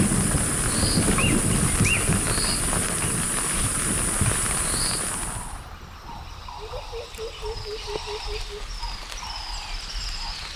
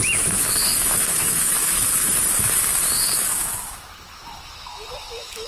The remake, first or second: second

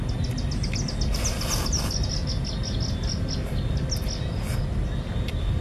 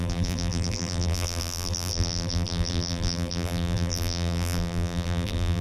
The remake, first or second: second